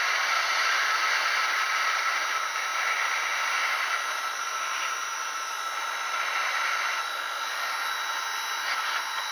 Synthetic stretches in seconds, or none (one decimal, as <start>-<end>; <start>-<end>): none